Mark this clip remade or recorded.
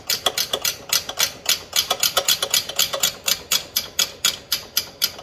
recorded